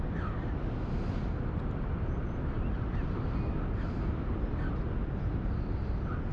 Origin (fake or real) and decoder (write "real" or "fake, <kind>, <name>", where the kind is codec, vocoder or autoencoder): real